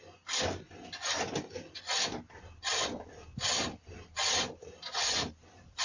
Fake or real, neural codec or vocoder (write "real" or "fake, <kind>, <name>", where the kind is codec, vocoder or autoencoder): real